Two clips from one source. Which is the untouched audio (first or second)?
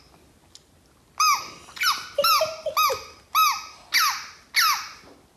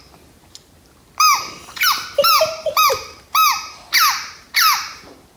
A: first